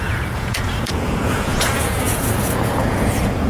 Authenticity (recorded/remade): remade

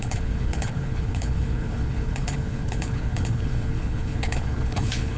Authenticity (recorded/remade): remade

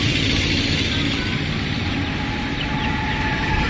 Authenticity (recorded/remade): recorded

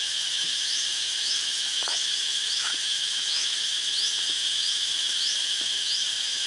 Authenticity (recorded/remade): remade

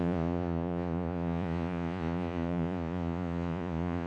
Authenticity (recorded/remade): remade